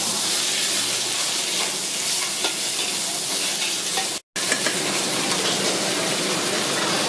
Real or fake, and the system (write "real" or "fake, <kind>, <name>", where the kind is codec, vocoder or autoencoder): real